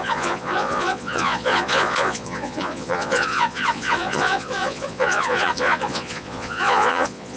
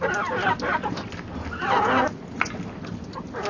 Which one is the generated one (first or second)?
first